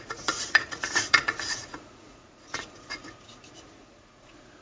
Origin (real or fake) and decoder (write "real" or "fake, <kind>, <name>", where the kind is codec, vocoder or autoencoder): fake, vocoder, Vocos